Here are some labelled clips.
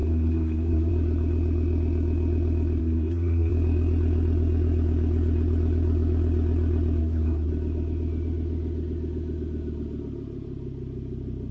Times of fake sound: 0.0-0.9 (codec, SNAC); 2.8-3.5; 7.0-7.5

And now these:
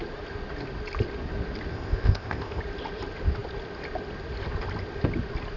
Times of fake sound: 1.7-2.6 (codec, ZipCodec)